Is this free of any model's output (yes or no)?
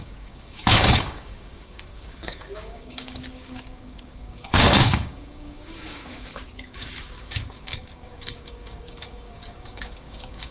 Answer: no